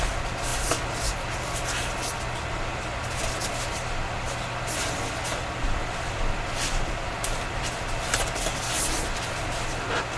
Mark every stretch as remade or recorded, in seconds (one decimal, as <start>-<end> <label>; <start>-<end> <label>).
0.0-10.2 recorded